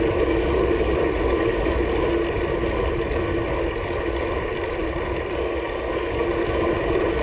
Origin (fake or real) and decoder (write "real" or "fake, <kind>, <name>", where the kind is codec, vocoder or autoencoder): real